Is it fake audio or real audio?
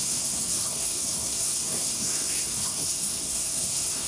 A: fake